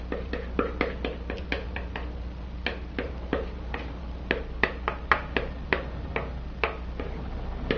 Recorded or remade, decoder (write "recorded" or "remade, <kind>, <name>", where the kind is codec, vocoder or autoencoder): recorded